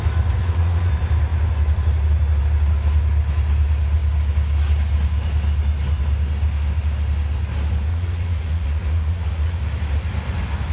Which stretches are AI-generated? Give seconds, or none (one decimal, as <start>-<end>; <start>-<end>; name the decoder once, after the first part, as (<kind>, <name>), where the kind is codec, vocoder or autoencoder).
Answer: 0.4-0.9 (vocoder, Vocos); 7.9-9.6